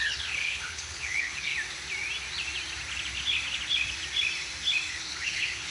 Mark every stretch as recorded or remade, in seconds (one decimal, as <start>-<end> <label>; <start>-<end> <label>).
0.0-1.5 remade; 1.5-4.9 recorded; 4.9-5.7 remade